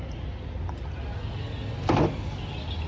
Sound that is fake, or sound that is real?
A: real